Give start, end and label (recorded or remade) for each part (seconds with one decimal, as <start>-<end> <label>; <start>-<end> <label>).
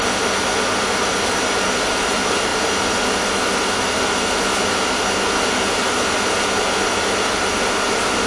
0.0-8.3 recorded